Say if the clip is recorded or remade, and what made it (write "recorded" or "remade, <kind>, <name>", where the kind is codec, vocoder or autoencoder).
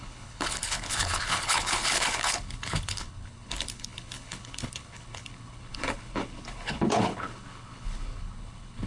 remade, codec, HILCodec